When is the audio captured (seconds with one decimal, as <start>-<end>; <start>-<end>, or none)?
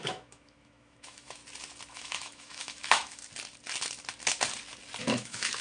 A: 1.4-1.9; 3.2-5.0